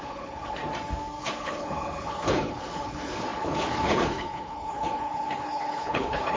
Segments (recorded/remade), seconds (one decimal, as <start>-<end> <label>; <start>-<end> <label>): 0.0-0.6 remade; 0.6-1.2 recorded; 1.2-6.4 remade